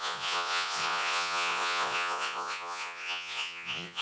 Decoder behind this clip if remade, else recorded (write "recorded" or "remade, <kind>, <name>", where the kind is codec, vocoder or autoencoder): remade, vocoder, Vocos